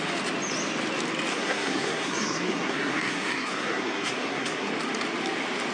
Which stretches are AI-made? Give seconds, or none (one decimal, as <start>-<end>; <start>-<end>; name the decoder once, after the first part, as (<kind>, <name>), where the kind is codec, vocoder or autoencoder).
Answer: 1.3-4.7 (codec, SNAC)